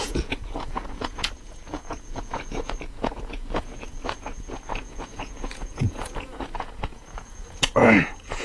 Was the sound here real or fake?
fake